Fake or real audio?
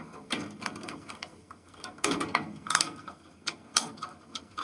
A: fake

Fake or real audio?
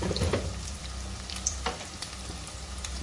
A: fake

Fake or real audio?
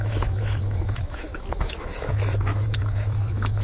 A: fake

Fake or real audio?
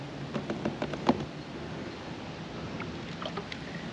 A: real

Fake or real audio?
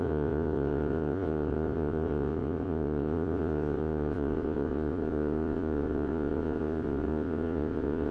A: fake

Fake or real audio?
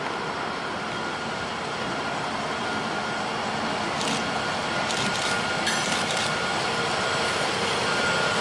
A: real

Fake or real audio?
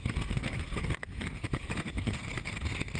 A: fake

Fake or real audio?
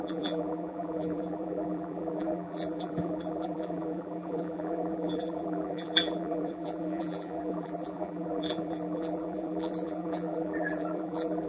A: fake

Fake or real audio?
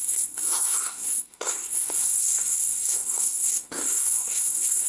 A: fake